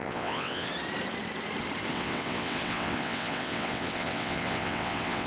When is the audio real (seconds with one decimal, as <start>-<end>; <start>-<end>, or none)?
0.7-1.9